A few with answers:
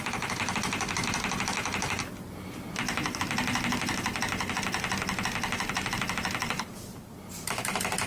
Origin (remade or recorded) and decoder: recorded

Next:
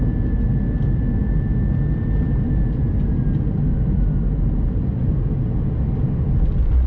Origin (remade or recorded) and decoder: recorded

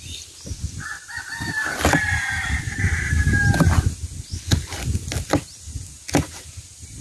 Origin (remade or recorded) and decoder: recorded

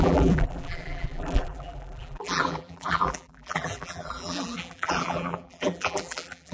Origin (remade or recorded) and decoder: remade, vocoder, BigVGAN v2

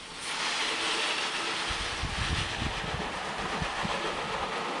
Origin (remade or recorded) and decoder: recorded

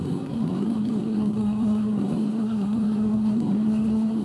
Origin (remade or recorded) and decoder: remade, codec, SNAC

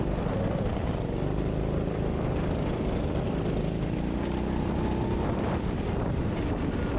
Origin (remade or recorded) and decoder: remade, vocoder, BigVGAN v2